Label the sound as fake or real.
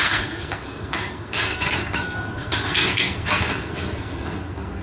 fake